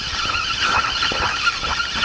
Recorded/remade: recorded